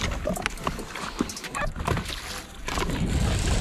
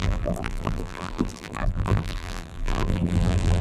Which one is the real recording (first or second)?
first